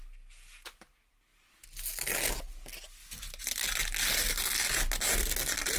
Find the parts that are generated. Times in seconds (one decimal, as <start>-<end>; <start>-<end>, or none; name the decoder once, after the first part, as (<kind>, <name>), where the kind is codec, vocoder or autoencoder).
none